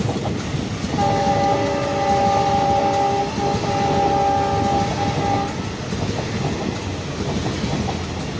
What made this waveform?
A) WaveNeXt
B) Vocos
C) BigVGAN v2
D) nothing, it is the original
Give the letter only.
D